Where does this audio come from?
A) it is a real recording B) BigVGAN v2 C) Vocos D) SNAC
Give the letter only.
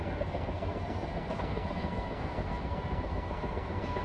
D